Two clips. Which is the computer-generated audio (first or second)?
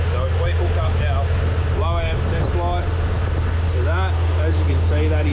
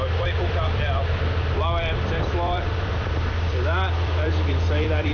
second